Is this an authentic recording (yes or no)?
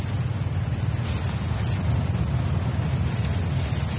yes